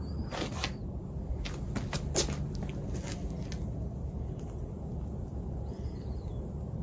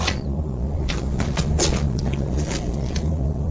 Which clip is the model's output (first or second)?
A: second